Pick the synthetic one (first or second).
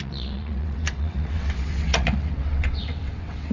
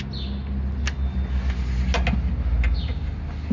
first